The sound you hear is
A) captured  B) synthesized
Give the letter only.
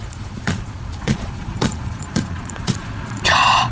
B